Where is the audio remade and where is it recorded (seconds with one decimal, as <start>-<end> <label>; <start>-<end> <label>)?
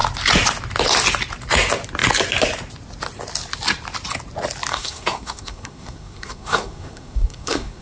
0.0-4.7 recorded; 4.7-7.8 remade